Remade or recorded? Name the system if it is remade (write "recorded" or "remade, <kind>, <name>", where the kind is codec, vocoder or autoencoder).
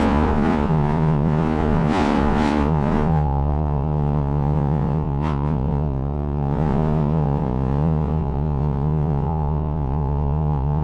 remade, vocoder, Vocos